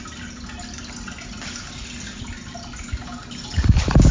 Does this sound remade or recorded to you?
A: recorded